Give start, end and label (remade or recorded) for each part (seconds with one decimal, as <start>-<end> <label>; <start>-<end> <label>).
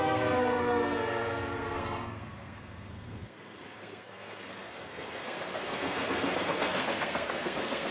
0.0-7.9 remade